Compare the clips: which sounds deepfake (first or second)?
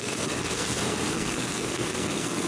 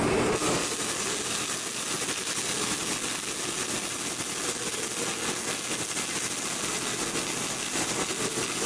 first